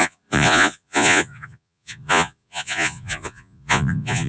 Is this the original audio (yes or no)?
no